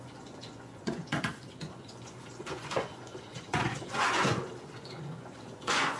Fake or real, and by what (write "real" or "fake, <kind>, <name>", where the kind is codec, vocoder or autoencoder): fake, vocoder, Vocos